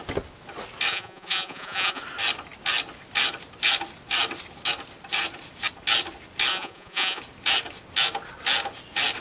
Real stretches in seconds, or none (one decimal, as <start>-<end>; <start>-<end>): 0.0-0.9; 2.0-6.5; 7.2-9.2